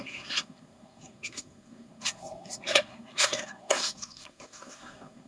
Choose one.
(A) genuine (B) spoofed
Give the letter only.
B